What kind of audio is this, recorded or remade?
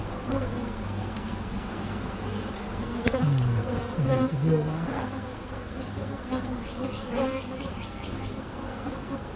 remade